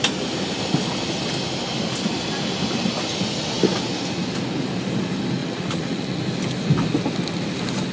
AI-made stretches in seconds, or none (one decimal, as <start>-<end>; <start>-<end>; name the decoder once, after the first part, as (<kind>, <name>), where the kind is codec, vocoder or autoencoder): 5.4-6.2 (vocoder, Vocos)